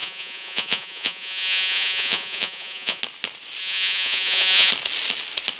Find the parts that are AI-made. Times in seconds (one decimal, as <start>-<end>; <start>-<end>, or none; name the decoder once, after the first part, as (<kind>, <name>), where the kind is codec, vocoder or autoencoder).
0.0-3.0 (vocoder, Vocos); 3.6-4.7